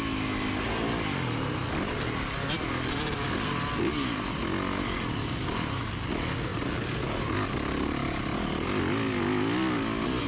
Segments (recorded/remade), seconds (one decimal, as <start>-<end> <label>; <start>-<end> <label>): 0.0-10.3 recorded

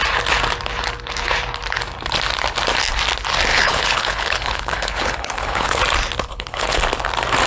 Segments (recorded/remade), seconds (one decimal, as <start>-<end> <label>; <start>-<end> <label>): 0.0-3.5 recorded; 3.5-5.8 remade; 5.8-6.3 recorded; 6.3-6.8 remade; 6.8-7.5 recorded

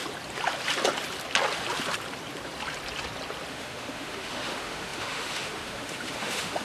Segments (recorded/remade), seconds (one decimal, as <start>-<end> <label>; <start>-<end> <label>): 0.0-3.5 recorded; 3.5-6.6 remade

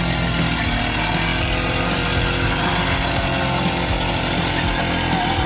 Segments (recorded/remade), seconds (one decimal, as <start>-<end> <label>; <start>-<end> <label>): 0.0-5.5 recorded

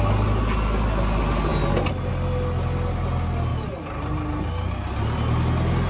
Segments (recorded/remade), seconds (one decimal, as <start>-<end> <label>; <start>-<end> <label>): 0.0-5.9 recorded

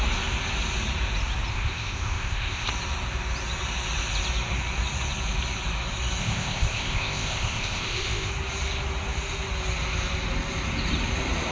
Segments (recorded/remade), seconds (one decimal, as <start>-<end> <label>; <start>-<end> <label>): 0.0-1.5 recorded; 1.5-2.7 remade; 2.7-6.2 recorded; 6.2-8.3 remade; 8.3-11.5 recorded